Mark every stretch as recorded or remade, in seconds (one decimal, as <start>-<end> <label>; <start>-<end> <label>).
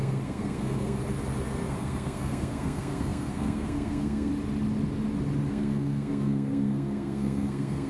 0.0-1.0 remade; 1.0-1.7 recorded; 1.7-4.3 remade; 4.3-5.5 recorded; 5.5-7.9 remade